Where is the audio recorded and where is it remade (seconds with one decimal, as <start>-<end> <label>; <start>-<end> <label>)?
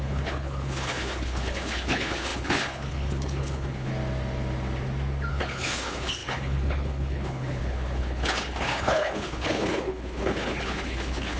0.0-3.9 remade; 3.9-5.3 recorded; 5.3-11.4 remade